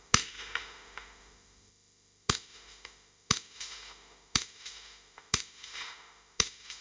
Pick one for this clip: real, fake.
fake